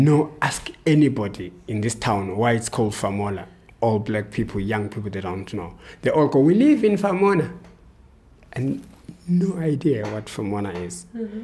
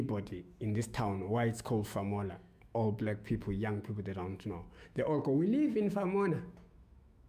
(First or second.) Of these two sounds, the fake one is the second